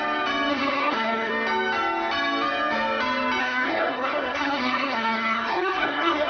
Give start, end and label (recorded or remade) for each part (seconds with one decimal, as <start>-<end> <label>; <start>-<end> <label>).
0.0-0.5 recorded; 0.5-1.3 remade; 1.3-3.4 recorded; 3.4-6.3 remade